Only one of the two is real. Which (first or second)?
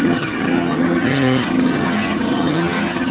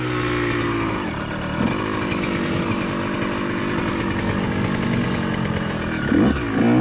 second